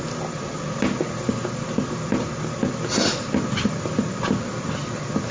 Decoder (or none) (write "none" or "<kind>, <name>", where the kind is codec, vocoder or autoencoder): none